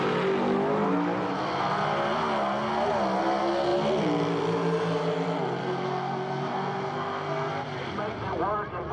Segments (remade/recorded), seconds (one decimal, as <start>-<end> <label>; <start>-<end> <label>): 0.0-5.6 recorded; 5.6-7.5 remade; 7.5-8.9 recorded